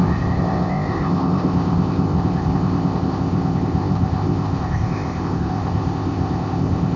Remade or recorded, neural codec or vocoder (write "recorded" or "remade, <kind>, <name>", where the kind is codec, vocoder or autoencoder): remade, codec, ZipCodec